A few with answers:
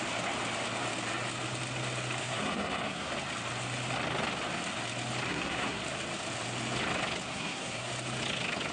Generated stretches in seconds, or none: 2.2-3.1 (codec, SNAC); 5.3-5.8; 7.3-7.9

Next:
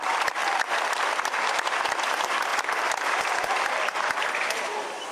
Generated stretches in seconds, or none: none

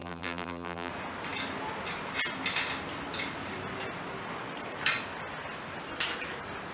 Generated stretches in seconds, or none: 0.0-0.9 (vocoder, BigVGAN v2)

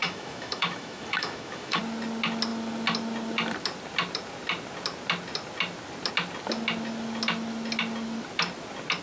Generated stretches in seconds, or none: 0.0-1.8 (autoencoder, DAC-VAE)

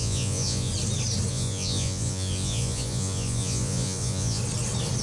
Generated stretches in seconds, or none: 0.0-0.7 (vocoder, Vocos); 1.3-4.4

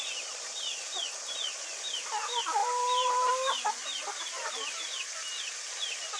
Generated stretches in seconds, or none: 2.6-3.3 (vocoder, BigVGAN v2)

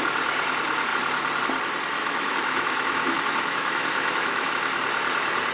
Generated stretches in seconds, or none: 2.0-4.5 (autoencoder, DAC-VAE)